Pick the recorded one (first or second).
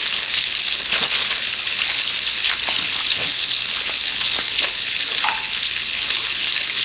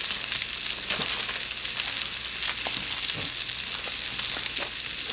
second